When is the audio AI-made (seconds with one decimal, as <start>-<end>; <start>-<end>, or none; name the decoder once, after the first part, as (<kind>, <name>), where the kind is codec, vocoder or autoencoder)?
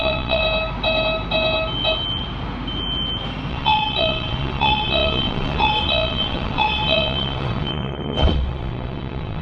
0.0-0.4 (vocoder, WaveNeXt); 3.5-9.4